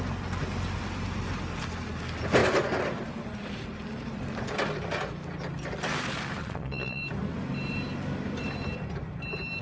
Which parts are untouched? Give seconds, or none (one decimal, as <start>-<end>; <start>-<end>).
0.0-6.4; 7.0-9.6